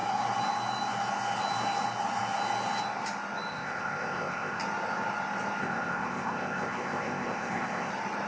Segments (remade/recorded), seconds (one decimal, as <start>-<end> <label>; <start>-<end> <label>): 0.0-3.5 recorded; 3.5-4.6 remade; 4.6-5.6 recorded; 5.6-7.9 remade; 7.9-8.3 recorded